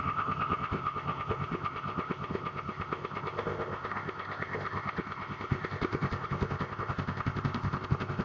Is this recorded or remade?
remade